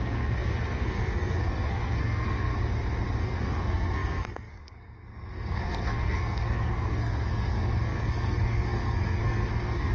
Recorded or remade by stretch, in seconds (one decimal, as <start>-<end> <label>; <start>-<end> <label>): 0.0-2.5 remade; 2.5-3.2 recorded; 3.2-9.9 remade